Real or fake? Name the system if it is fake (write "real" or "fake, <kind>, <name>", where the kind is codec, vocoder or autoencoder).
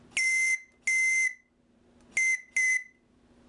real